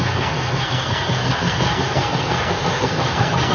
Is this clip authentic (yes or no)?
no